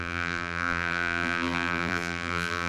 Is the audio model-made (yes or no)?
yes